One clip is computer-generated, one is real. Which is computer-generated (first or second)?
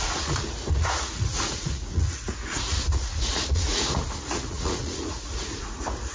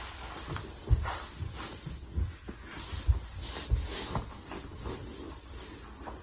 first